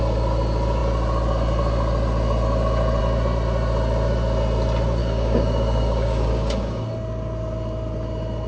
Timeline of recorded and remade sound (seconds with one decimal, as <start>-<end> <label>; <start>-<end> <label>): 0.0-5.0 recorded; 5.0-6.8 remade; 6.8-8.5 recorded